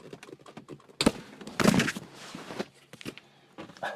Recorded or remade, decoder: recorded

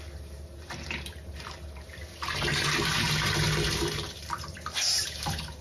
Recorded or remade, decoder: remade, vocoder, BigVGAN v2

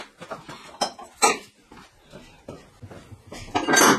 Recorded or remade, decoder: recorded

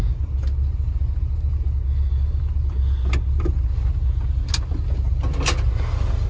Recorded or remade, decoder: recorded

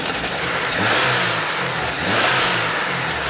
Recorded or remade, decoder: recorded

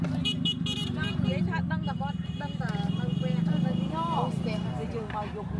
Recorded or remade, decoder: recorded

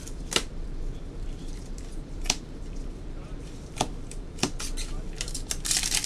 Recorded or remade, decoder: remade, vocoder, BigVGAN v2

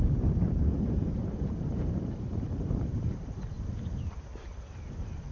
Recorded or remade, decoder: remade, vocoder, BigVGAN v2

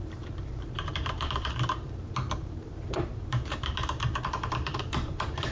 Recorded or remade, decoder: remade, vocoder, BigVGAN v2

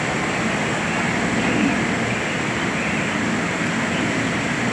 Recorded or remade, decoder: recorded